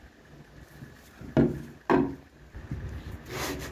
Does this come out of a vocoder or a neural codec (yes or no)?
no